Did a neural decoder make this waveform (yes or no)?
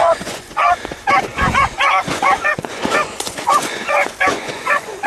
yes